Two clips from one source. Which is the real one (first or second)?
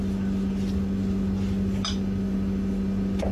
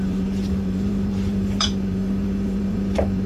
first